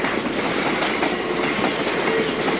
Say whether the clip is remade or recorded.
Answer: recorded